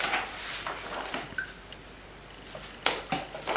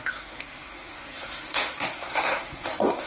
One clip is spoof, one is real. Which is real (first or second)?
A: first